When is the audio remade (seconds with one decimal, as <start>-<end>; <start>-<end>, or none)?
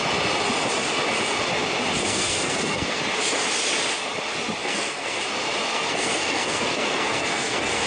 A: 2.0-3.0; 4.6-5.2; 5.7-7.9